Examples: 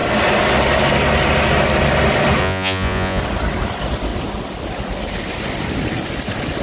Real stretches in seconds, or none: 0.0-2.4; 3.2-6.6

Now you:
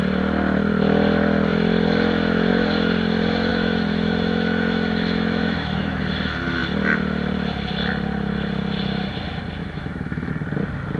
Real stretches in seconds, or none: 0.0-3.5; 6.0-9.6; 10.3-11.0

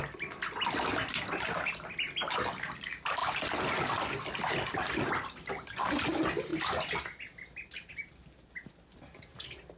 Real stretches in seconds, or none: 0.0-9.8

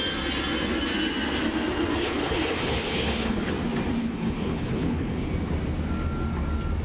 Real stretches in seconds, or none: 0.0-2.0; 3.5-4.0; 5.3-6.8